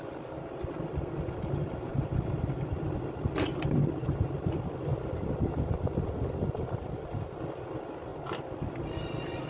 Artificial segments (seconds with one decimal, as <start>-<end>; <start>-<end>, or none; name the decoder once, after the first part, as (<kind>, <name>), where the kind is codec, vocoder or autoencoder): none